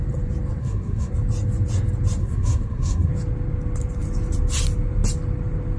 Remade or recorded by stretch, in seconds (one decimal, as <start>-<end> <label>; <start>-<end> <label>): 0.0-0.6 recorded; 0.6-1.1 remade; 1.1-2.2 recorded; 2.2-3.1 remade; 3.1-5.8 recorded

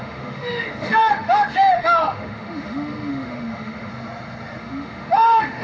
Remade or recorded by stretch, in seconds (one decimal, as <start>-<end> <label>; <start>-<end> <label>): 0.0-3.9 remade; 3.9-4.6 recorded; 4.6-5.6 remade

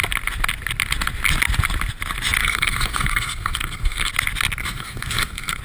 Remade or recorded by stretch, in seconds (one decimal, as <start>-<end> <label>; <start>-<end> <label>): 0.0-2.4 recorded; 2.4-4.1 remade; 4.1-4.6 recorded; 4.6-5.6 remade